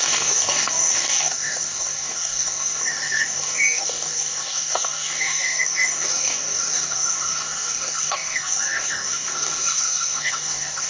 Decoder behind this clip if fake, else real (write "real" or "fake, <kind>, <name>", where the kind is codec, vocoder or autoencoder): fake, codec, DAC